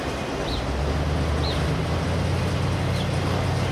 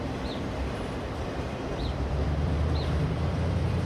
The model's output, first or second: second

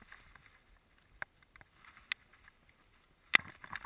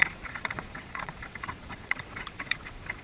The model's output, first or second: second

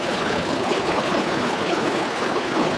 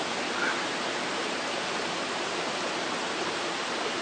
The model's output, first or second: first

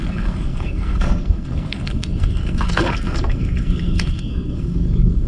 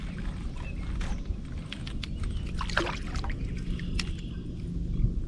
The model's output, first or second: first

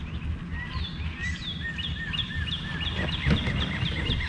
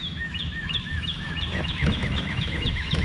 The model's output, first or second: second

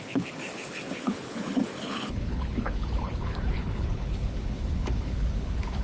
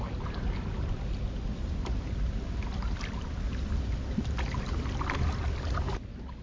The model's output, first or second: first